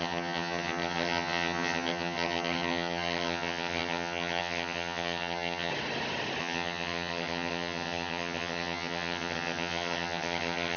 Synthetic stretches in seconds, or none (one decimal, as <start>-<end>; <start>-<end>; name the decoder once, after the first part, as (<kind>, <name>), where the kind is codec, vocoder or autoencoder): 0.0-5.7 (vocoder, HiFi-GAN); 6.4-10.8